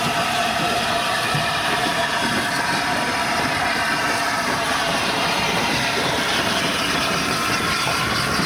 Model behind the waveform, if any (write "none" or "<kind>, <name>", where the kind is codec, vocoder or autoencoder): vocoder, BigVGAN v2